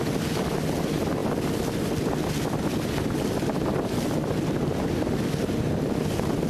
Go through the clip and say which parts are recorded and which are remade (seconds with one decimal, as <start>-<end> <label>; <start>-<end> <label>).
0.0-6.5 recorded